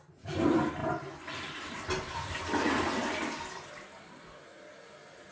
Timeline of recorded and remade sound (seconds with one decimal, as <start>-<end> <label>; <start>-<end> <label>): 0.0-5.3 recorded